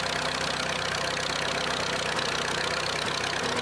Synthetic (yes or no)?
no